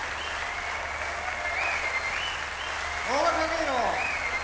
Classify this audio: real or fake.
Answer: real